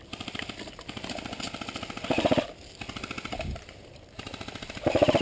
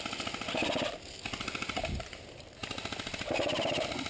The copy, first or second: first